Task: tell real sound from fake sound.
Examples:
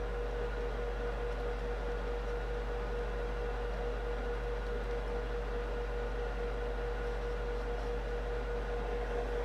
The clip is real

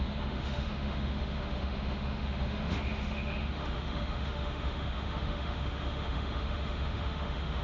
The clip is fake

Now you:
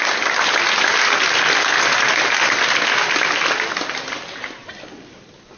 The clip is real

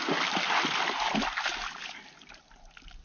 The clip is real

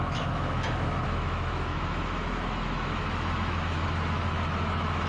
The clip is fake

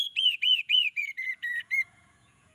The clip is fake